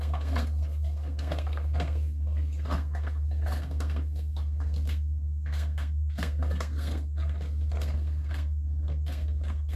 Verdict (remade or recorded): remade